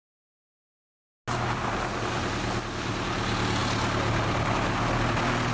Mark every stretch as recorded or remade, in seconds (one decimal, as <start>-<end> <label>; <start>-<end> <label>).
0.0-5.5 recorded